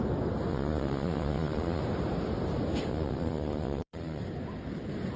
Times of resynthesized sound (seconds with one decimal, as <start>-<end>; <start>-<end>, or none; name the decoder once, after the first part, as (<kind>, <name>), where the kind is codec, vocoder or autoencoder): 0.5-1.8 (vocoder, Vocos); 2.9-4.2